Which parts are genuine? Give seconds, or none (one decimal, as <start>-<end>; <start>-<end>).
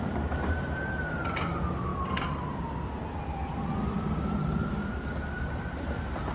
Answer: 0.0-6.3